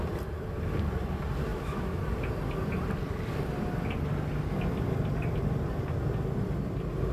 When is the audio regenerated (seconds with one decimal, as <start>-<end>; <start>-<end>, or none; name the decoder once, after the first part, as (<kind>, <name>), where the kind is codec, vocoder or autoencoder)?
1.5-2.0 (autoencoder, DAC-VAE)